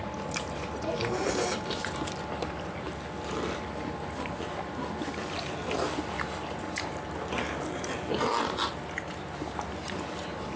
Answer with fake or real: real